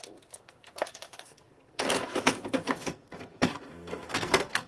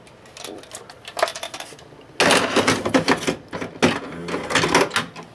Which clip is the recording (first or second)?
second